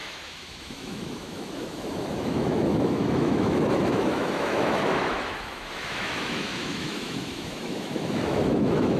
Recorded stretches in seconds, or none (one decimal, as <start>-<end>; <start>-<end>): none